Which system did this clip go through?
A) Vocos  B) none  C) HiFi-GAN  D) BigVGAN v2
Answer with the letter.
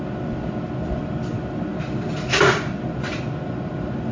B